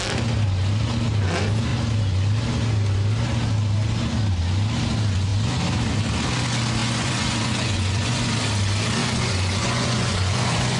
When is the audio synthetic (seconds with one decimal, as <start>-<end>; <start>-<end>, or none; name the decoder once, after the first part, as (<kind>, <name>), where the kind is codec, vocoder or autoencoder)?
6.8-8.3 (vocoder, Vocos); 9.0-10.8